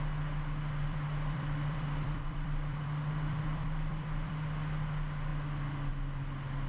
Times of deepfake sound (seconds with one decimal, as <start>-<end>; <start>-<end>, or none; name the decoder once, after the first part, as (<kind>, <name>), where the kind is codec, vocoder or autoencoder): 0.8-4.3 (vocoder, BigVGAN v2)